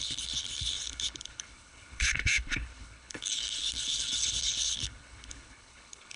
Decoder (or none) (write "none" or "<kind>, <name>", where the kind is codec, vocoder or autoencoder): codec, HILCodec